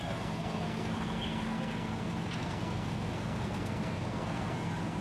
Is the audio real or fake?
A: fake